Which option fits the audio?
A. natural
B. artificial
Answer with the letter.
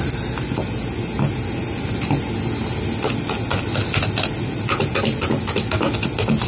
A